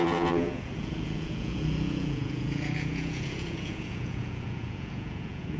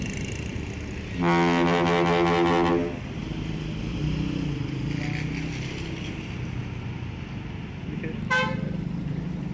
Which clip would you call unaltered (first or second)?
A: second